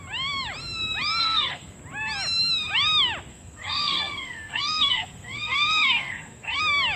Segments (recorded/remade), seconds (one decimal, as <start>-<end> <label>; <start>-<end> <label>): 0.0-1.2 recorded; 1.2-1.8 remade; 1.8-3.3 recorded; 3.3-6.6 remade; 6.6-7.0 recorded